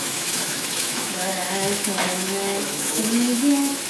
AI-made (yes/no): yes